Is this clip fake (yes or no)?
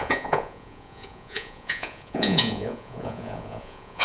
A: yes